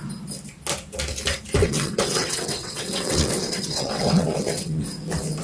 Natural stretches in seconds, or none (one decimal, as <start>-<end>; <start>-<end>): 0.0-1.6; 4.8-5.4